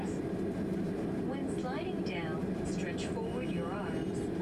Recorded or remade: recorded